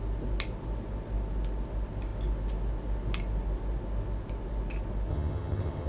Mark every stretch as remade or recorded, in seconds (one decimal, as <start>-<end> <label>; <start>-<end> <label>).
0.0-5.1 recorded; 5.1-5.9 remade